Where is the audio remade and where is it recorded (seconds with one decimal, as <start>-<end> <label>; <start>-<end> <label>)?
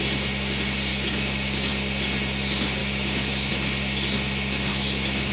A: 0.0-0.9 recorded; 0.9-1.7 remade; 1.7-2.8 recorded; 2.8-3.5 remade; 3.5-4.7 recorded; 4.7-5.3 remade